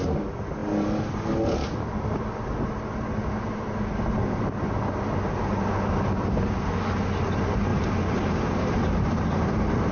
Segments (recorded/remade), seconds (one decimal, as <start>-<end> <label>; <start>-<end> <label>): 0.0-7.7 recorded; 7.7-9.9 remade